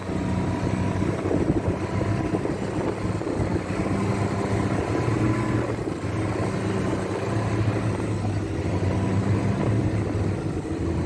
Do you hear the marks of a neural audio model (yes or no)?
no